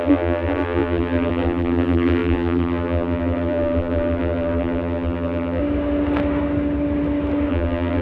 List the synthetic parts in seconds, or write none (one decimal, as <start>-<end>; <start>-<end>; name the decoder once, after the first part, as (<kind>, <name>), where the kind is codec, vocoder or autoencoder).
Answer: 0.0-5.6 (vocoder, BigVGAN v2); 7.5-8.0